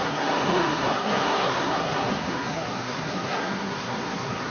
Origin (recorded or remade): remade